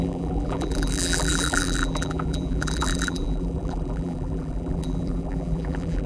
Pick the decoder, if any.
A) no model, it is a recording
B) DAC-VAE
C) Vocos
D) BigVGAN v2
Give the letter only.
D